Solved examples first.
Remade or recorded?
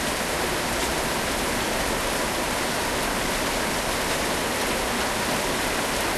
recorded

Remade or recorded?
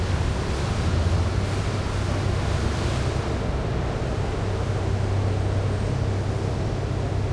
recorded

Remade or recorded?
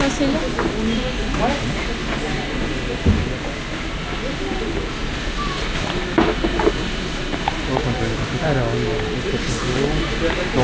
recorded